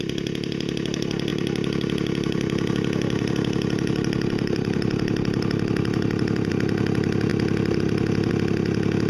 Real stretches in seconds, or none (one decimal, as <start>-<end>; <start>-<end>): 0.0-1.3; 6.5-9.1